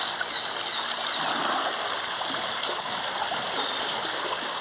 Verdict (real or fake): real